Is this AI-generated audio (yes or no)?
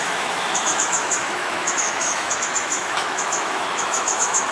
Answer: yes